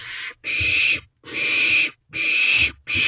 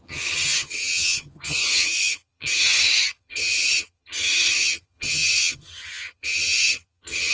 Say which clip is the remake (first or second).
second